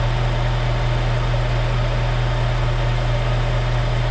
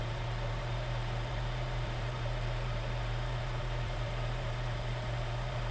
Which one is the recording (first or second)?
first